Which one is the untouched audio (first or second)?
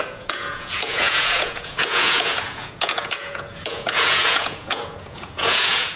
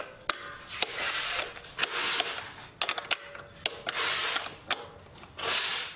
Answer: second